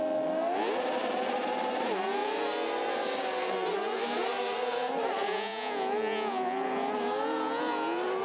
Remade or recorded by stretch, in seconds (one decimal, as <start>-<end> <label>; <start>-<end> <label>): 0.0-8.2 recorded